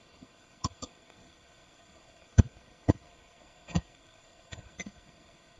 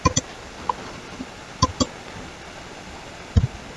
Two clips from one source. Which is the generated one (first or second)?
first